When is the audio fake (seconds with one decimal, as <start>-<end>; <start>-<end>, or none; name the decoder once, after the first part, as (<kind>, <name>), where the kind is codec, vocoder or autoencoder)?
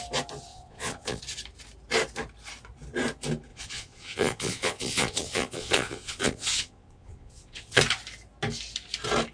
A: 0.5-1.2 (vocoder, Vocos); 3.5-7.8